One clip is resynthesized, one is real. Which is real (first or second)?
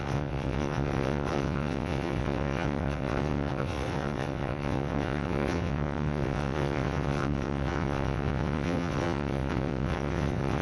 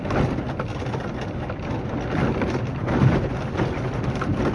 second